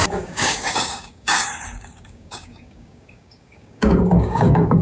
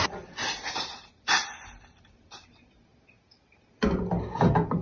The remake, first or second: first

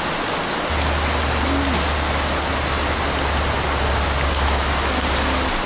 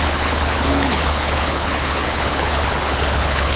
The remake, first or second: second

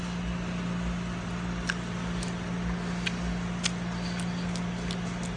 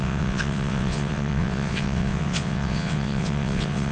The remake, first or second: second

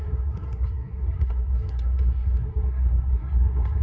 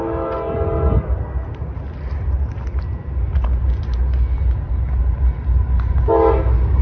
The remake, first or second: first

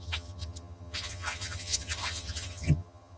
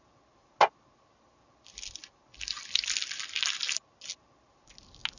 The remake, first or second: first